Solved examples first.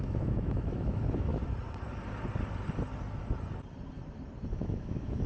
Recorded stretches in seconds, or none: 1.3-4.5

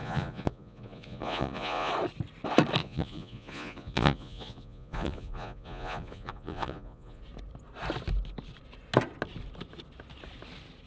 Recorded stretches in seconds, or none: 1.9-2.8; 7.2-10.9

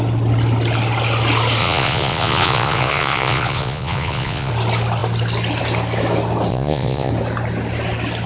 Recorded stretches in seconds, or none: 0.0-1.6; 4.5-6.5; 7.1-8.3

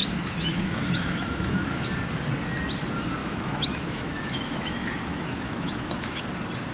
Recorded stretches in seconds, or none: 1.9-3.2; 6.2-6.7

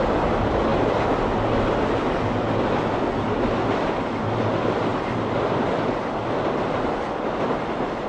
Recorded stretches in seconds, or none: 0.0-4.9; 5.6-8.1